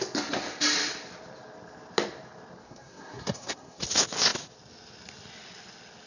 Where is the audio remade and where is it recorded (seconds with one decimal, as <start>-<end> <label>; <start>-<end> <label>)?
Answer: 0.0-2.6 recorded; 2.6-3.8 remade; 3.8-6.1 recorded

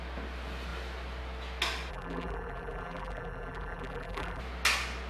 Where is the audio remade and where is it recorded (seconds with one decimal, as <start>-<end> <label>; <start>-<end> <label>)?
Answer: 0.0-1.9 recorded; 1.9-4.4 remade; 4.4-5.1 recorded